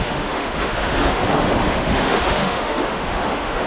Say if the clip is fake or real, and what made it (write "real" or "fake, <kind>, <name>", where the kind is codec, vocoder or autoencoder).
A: fake, autoencoder, DAC-VAE